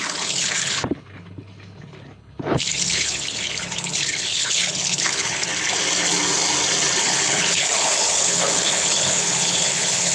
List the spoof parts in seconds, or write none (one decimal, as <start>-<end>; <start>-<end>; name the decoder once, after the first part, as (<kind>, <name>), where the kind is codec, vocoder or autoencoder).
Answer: 0.0-5.5 (codec, HILCodec); 7.0-10.1